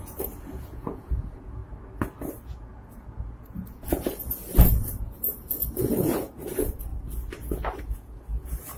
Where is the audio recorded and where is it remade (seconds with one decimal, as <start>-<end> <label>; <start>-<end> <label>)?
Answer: 0.0-1.6 remade; 1.6-2.4 recorded; 2.4-4.4 remade; 4.4-5.0 recorded; 5.0-6.9 remade; 6.9-7.8 recorded; 7.8-8.8 remade